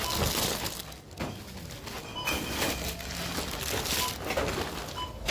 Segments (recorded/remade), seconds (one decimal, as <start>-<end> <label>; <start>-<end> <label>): 0.0-5.3 recorded